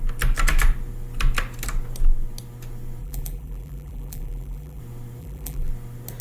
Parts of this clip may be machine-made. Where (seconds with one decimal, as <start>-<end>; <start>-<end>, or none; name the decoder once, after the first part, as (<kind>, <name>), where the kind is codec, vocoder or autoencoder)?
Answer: 3.0-4.8 (vocoder, BigVGAN v2); 5.2-5.7